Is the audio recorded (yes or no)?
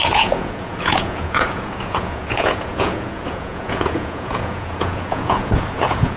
no